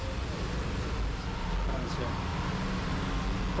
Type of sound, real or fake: real